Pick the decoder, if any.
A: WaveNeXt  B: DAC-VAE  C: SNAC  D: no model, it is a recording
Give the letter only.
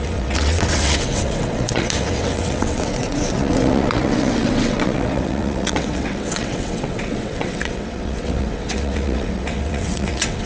A